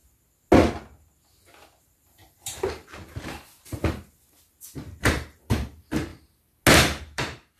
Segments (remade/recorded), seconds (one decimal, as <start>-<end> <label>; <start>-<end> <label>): 0.0-1.8 recorded; 1.8-3.8 remade; 3.8-5.0 recorded; 5.0-6.1 remade; 6.1-7.0 recorded; 7.0-7.6 remade